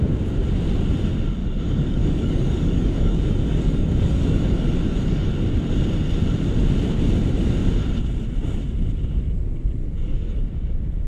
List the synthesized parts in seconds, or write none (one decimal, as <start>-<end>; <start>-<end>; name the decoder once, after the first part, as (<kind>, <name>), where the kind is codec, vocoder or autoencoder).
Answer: 1.4-5.3 (codec, DAC); 9.8-10.4